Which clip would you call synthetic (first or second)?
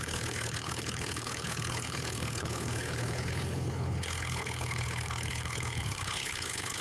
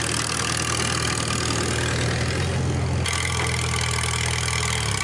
first